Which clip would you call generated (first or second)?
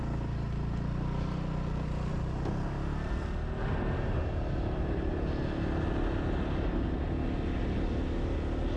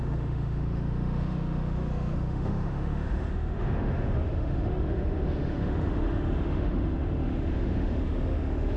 second